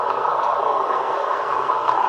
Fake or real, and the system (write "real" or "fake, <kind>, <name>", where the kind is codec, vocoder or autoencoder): fake, codec, SNAC